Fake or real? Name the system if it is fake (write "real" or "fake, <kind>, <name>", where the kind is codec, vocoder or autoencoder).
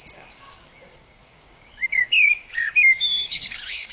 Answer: fake, codec, DAC